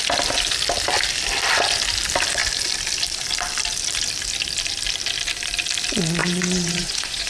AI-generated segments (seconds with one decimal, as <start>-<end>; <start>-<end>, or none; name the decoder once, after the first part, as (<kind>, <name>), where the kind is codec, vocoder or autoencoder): 6.2-7.3 (vocoder, Vocos)